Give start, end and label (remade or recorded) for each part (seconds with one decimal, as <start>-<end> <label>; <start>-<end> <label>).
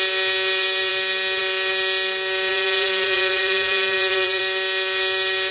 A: 0.0-2.5 recorded; 2.5-4.4 remade; 4.4-5.5 recorded